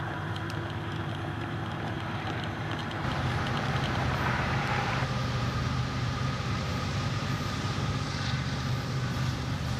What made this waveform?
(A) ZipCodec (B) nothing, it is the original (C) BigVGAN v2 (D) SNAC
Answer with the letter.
C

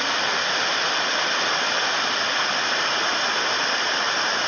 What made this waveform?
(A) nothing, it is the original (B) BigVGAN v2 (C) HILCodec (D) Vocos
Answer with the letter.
A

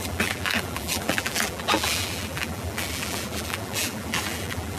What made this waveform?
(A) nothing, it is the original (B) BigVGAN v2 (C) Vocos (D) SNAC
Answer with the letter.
B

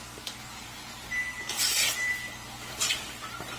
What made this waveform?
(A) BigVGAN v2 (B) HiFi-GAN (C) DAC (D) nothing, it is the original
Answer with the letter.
D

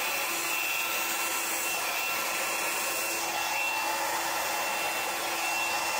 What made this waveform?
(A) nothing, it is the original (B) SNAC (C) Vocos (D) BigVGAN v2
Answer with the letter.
A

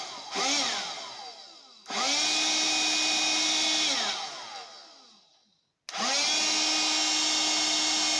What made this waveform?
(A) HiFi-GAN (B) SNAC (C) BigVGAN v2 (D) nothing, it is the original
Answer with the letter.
D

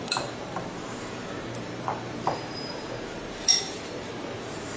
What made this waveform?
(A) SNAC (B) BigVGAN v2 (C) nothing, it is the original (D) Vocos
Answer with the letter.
B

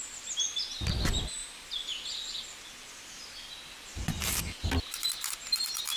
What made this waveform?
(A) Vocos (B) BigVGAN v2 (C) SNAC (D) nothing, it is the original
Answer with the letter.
B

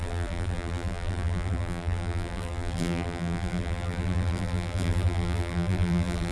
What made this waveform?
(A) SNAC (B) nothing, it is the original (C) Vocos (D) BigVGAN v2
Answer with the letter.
D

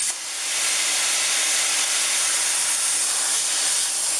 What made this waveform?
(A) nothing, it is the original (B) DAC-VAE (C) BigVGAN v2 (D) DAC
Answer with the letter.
C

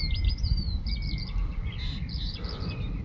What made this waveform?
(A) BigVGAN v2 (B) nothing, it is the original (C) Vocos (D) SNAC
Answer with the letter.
B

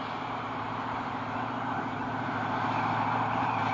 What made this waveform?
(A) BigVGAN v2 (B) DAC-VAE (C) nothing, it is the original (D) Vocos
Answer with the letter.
A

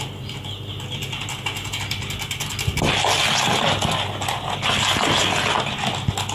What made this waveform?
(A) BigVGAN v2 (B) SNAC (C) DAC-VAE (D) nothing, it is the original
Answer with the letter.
D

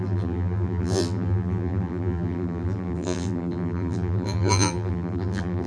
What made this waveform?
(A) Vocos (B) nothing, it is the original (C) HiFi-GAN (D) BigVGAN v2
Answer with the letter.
D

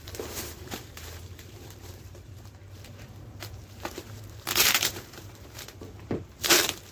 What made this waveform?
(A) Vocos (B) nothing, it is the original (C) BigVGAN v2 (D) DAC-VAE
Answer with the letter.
C